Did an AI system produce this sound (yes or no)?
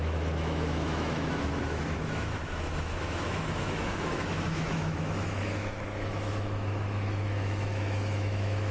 yes